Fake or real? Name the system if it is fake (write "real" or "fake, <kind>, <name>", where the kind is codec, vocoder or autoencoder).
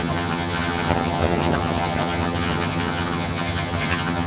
fake, vocoder, HiFi-GAN